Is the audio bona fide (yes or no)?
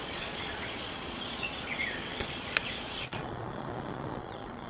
no